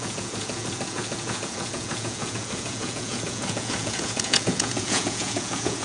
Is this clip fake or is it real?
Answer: fake